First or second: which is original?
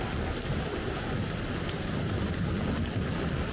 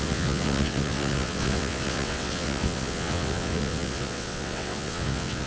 first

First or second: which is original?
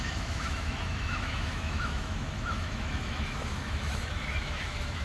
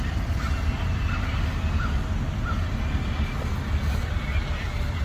second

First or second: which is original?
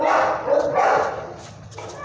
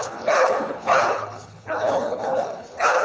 first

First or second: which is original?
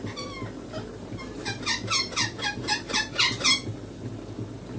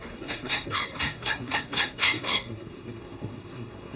first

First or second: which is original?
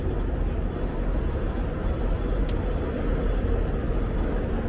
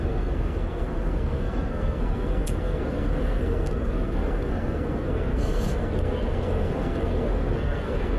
first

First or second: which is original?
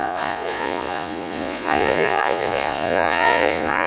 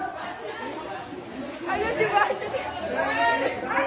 second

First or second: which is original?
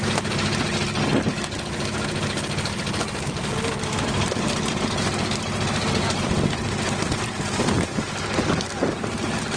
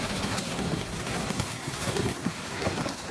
first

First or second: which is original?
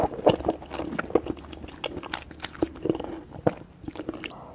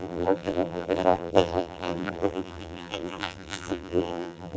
first